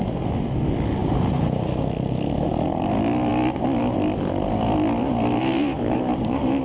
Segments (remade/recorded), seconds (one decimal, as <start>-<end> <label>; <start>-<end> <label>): 0.0-1.0 recorded; 1.0-1.8 remade; 1.8-5.4 recorded; 5.4-6.6 remade